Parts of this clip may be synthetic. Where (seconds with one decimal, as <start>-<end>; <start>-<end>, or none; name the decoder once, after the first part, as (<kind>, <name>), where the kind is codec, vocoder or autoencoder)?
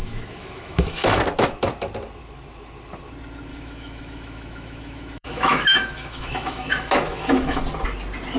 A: 0.0-1.2 (autoencoder, DAC-VAE); 3.5-7.6